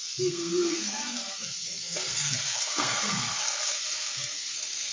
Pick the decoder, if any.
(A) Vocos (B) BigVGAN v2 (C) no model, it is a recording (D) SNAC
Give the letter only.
D